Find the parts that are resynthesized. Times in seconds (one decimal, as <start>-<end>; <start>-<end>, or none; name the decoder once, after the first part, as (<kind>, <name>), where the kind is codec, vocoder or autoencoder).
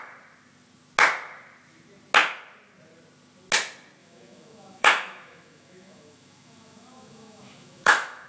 4.0-8.3 (autoencoder, DAC-VAE)